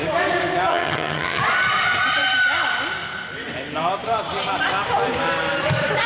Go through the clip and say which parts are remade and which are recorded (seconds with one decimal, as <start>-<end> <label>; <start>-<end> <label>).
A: 0.0-0.7 recorded; 0.7-1.4 remade; 1.4-6.1 recorded